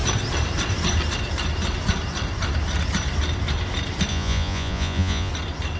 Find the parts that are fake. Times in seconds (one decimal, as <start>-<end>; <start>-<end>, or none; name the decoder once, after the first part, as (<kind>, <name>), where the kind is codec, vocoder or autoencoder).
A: 4.1-5.3 (vocoder, Vocos)